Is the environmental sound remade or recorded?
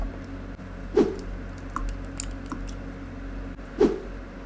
recorded